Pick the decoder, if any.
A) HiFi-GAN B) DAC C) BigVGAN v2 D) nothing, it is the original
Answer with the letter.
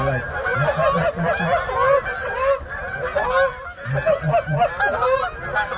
D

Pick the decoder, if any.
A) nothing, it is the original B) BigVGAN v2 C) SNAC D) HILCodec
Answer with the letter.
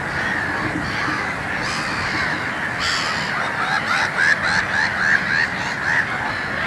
A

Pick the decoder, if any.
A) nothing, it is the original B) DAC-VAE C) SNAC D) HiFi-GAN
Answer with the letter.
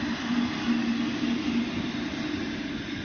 A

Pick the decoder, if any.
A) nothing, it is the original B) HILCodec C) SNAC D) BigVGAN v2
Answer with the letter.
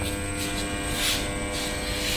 A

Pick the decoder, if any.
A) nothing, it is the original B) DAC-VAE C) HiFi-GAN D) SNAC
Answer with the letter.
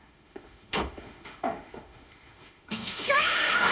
B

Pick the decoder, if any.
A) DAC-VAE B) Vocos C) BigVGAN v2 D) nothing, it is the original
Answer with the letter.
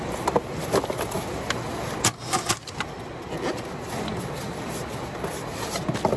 D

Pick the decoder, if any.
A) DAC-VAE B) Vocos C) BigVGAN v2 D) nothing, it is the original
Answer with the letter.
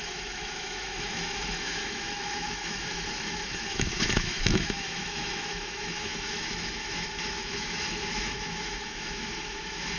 A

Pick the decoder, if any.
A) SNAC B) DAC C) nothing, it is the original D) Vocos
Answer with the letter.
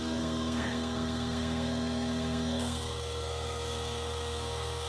A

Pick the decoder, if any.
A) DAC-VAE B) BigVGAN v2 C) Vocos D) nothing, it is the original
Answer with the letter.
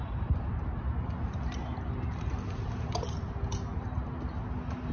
D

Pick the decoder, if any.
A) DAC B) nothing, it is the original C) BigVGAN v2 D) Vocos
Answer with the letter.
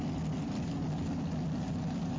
B